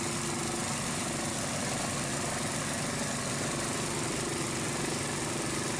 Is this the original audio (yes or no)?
yes